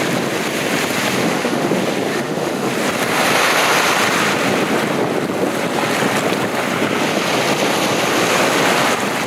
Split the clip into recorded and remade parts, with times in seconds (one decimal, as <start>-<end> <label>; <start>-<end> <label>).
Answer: 0.0-1.2 recorded; 1.2-1.7 remade; 1.7-2.1 recorded; 2.1-2.7 remade; 2.7-9.3 recorded